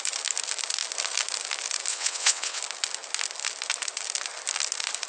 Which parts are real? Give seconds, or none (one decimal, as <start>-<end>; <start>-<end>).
0.0-1.9; 2.6-5.1